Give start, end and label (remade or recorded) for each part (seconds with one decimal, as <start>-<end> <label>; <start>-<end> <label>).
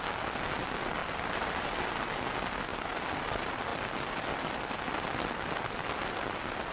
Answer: 0.0-1.0 recorded; 1.0-1.8 remade; 1.8-2.7 recorded; 2.7-3.2 remade; 3.2-6.7 recorded